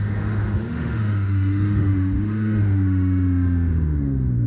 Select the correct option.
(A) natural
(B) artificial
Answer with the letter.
B